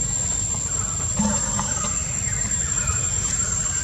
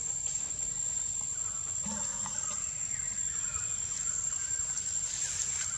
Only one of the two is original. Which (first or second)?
second